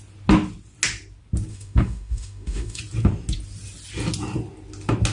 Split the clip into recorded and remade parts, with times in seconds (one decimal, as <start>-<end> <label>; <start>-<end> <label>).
0.0-1.5 recorded; 1.5-2.8 remade; 2.8-5.1 recorded